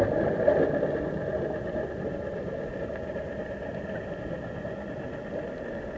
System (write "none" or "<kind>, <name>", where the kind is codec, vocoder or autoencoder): none